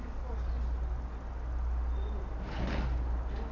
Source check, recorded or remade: recorded